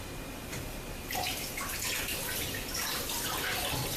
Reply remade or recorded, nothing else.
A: recorded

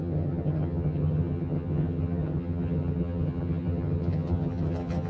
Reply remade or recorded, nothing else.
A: remade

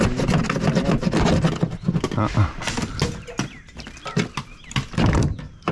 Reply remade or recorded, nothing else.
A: recorded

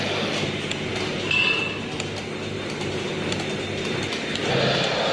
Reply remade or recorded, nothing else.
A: recorded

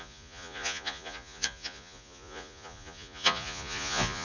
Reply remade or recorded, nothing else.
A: remade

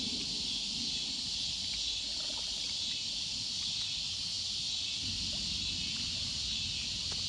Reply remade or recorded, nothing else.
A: recorded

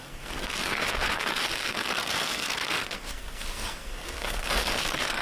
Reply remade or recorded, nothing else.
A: remade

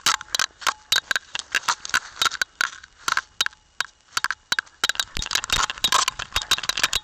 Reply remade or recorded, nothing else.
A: recorded